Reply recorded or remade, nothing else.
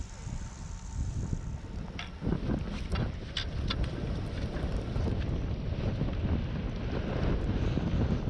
recorded